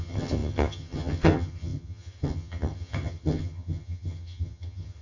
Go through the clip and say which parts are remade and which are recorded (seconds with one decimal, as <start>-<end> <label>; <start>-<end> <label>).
0.0-5.0 remade